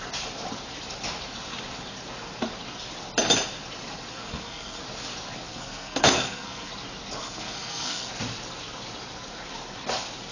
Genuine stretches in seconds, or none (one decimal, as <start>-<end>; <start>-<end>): 0.0-4.1; 4.8-5.5; 6.7-7.2; 8.1-10.3